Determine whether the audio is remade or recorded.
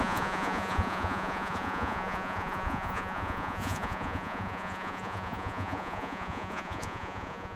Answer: remade